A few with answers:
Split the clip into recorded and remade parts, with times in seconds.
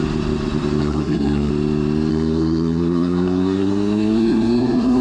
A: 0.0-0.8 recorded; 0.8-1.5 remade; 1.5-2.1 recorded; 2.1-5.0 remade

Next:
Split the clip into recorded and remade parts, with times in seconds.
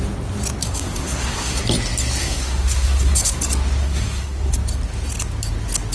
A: 0.0-0.6 recorded; 0.6-1.6 remade; 1.6-2.2 recorded; 2.2-3.4 remade; 3.4-3.8 recorded; 3.8-4.6 remade; 4.6-5.9 recorded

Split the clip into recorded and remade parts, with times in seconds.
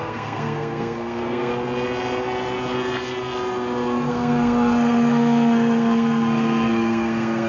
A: 0.0-1.5 remade; 1.5-4.1 recorded; 4.1-7.5 remade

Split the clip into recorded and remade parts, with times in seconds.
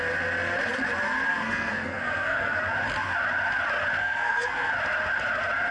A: 0.0-1.3 recorded; 1.3-2.6 remade; 2.6-4.0 recorded; 4.0-4.7 remade; 4.7-5.7 recorded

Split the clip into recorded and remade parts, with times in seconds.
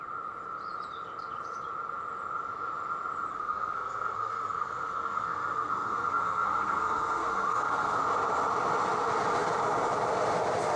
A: 0.0-3.3 recorded; 3.3-8.0 remade; 8.0-10.8 recorded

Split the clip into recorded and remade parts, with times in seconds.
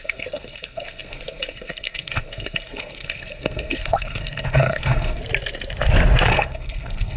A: 0.0-5.2 remade; 5.2-6.3 recorded; 6.3-7.2 remade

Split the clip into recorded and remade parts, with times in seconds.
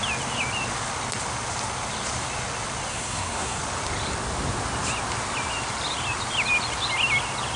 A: 0.0-2.9 recorded; 2.9-3.6 remade; 3.6-7.6 recorded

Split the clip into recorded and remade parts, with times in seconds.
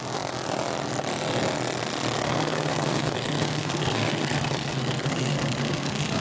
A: 0.0-2.2 recorded; 2.2-6.2 remade